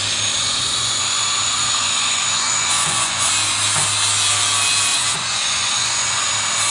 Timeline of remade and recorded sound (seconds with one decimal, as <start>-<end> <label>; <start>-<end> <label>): 0.0-0.4 recorded; 0.4-3.3 remade; 3.3-4.9 recorded; 4.9-6.3 remade; 6.3-6.7 recorded